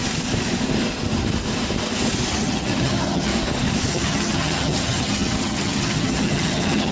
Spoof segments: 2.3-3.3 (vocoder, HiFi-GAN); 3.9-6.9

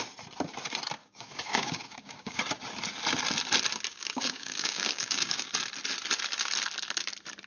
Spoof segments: 1.0-2.4 (codec, DAC); 3.9-5.5

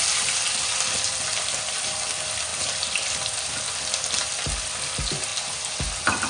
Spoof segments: 0.0-5.3 (vocoder, BigVGAN v2)

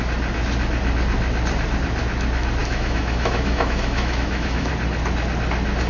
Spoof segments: 2.6-4.7 (autoencoder, DAC-VAE)

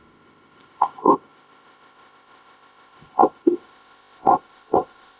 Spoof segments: 0.0-5.2 (codec, ZipCodec)

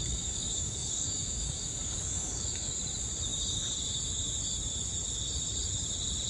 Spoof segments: 0.0-2.8 (codec, DAC)